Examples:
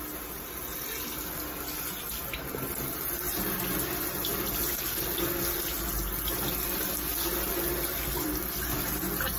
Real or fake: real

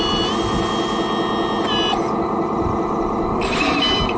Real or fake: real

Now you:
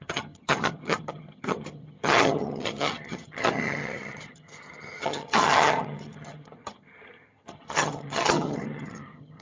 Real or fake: fake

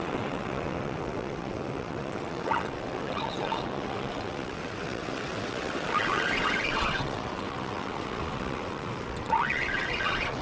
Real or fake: fake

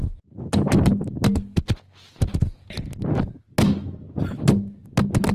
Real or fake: real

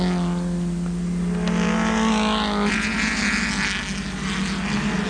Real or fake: real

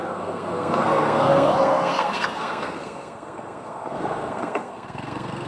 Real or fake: fake